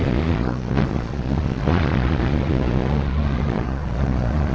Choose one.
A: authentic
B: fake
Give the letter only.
B